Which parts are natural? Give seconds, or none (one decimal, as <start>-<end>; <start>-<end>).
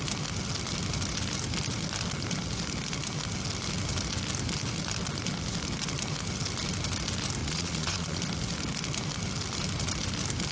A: 0.0-7.4; 8.2-10.5